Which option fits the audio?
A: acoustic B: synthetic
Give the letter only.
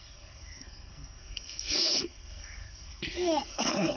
B